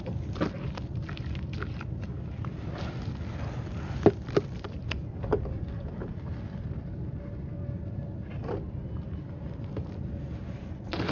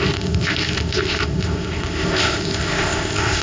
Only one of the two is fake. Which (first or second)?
second